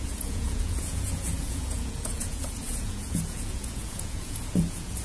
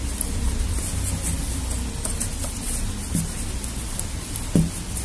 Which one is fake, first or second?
first